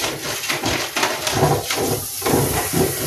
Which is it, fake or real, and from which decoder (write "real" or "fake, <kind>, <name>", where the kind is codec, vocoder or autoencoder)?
real